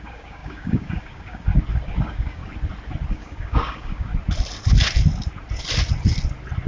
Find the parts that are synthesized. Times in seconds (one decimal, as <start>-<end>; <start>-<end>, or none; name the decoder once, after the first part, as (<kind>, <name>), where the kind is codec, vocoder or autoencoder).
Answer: 0.0-1.5 (codec, DAC); 2.0-2.4; 3.1-4.1